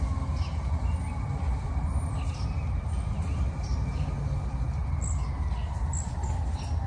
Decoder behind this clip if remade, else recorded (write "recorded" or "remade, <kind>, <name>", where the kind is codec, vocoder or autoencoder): recorded